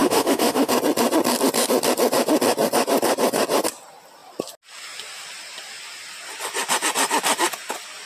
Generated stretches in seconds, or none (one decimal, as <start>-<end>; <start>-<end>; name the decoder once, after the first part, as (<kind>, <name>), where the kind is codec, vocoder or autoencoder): 0.0-0.7 (autoencoder, DAC-VAE)

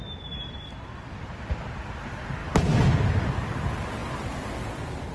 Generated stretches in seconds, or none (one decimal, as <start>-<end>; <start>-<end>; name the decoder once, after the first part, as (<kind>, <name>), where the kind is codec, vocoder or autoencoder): none

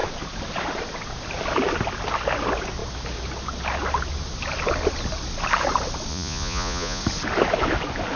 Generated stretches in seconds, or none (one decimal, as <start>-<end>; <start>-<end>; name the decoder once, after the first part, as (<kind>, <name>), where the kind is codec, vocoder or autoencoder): 6.1-7.0 (vocoder, Vocos)

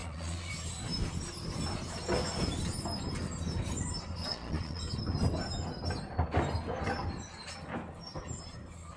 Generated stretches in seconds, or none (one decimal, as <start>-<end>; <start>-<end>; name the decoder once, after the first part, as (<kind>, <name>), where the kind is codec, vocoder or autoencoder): 0.0-0.5 (vocoder, Vocos); 4.3-4.8

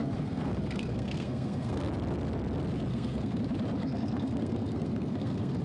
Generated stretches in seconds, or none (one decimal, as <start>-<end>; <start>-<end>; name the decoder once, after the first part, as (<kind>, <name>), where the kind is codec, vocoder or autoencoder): 0.0-1.9 (codec, SNAC); 2.9-3.4; 3.8-5.6